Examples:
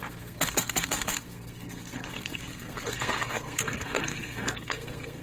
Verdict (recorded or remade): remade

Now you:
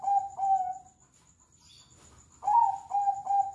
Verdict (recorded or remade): recorded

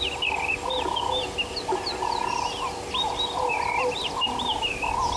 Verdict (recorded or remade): recorded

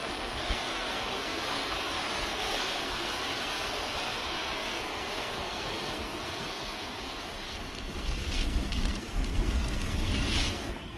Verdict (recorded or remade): remade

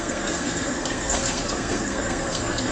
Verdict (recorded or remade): remade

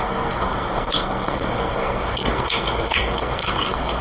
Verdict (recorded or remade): remade